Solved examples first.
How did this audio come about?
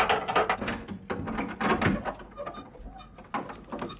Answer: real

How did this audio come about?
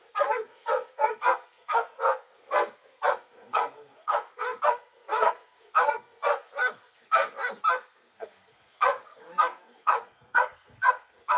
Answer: fake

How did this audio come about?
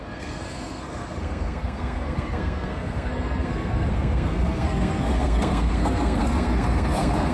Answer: fake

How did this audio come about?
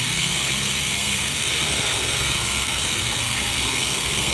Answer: fake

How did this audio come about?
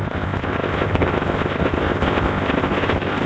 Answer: fake